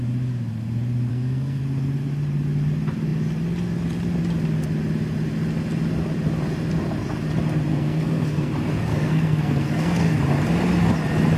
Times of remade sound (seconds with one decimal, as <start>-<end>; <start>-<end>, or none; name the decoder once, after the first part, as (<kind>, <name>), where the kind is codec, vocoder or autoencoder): 1.1-1.6 (codec, SNAC); 7.7-8.5; 8.9-10.2